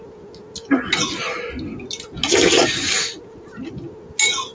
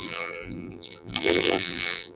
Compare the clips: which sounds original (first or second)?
first